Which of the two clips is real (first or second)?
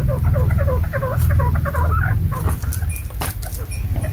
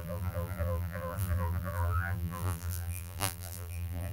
first